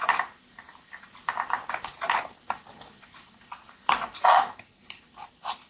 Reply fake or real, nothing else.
real